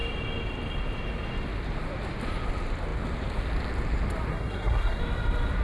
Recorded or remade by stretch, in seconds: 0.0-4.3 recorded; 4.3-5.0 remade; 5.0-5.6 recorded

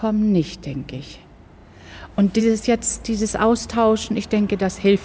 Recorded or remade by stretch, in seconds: 0.0-5.0 recorded

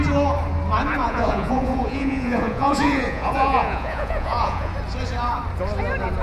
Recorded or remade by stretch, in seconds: 0.0-1.0 recorded; 1.0-4.7 remade; 4.7-6.2 recorded

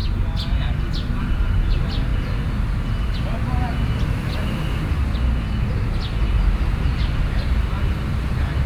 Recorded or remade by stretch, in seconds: 0.0-1.2 recorded; 1.2-2.1 remade; 2.1-6.3 recorded; 6.3-8.7 remade